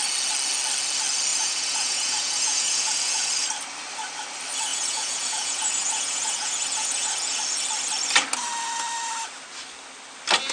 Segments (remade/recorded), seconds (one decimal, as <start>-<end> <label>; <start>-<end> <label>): 0.0-1.3 recorded; 1.3-3.3 remade; 3.3-4.7 recorded; 4.7-7.4 remade; 7.4-10.5 recorded